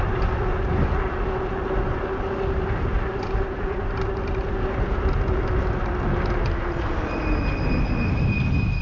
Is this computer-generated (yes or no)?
no